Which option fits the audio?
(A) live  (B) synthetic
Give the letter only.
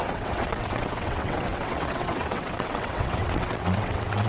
B